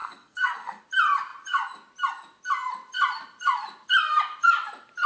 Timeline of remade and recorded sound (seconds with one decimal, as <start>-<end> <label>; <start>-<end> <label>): 0.0-0.8 remade; 0.8-5.1 recorded